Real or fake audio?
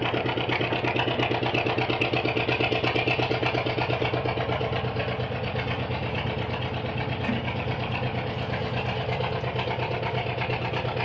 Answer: real